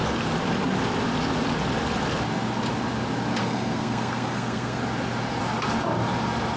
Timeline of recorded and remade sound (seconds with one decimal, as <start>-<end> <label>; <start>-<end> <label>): 0.0-3.4 recorded; 3.4-4.8 remade; 4.8-6.6 recorded